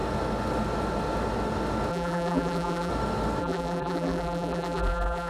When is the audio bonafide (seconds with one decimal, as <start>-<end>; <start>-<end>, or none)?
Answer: 0.0-1.9; 2.9-3.4